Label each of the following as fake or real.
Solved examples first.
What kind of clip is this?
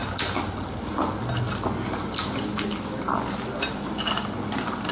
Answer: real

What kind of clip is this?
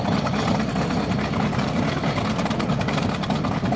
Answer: real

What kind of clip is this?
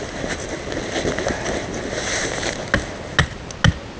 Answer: real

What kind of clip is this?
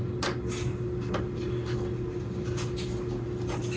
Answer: real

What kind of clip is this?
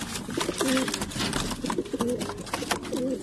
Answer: real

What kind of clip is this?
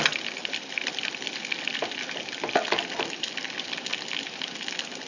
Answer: real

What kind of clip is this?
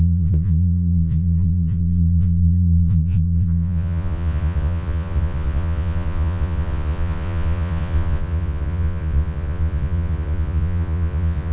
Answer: fake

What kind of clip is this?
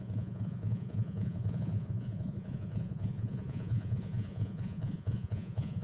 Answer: fake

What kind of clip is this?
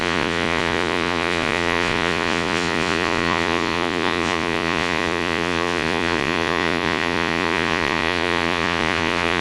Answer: fake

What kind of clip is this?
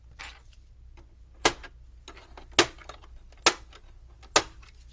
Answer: real